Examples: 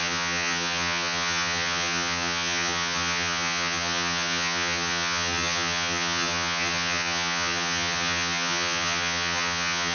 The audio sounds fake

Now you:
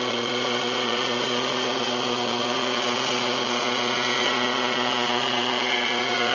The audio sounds fake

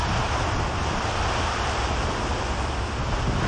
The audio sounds real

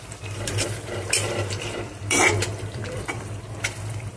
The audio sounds fake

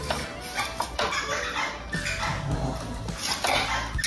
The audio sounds real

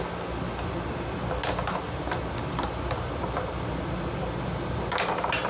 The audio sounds real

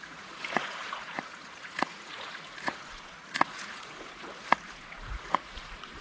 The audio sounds fake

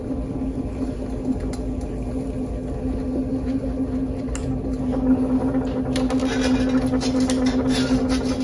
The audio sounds real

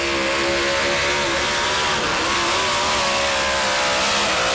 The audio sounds real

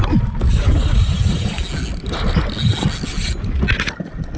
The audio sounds real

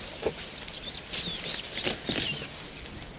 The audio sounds real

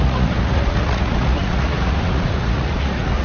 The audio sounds fake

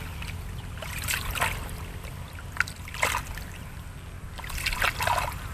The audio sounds real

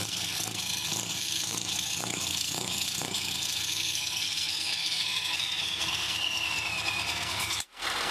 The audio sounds fake